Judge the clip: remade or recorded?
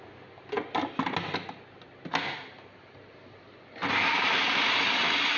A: recorded